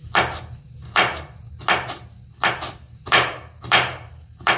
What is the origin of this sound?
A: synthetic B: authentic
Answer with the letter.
B